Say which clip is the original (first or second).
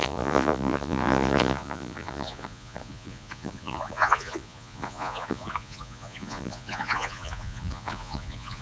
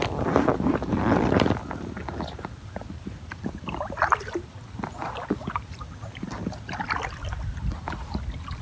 second